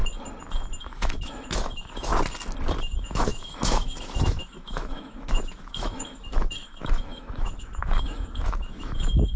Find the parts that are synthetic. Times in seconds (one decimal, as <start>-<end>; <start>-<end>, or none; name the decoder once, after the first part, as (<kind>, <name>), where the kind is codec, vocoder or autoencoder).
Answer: 0.9-2.1 (autoencoder, DAC-VAE); 2.8-9.4